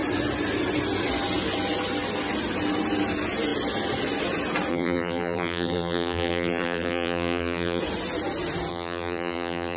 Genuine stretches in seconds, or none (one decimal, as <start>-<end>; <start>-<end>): 0.0-4.7; 7.8-8.7